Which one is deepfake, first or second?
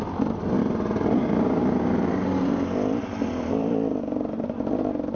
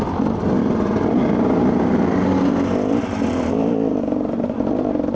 second